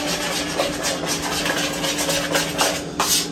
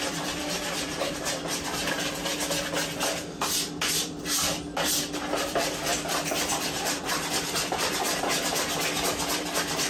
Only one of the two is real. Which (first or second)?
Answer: first